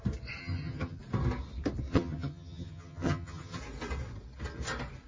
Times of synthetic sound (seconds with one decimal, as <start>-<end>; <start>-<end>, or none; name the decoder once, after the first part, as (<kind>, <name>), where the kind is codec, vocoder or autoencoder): 0.4-1.0 (vocoder, HiFi-GAN); 1.9-3.6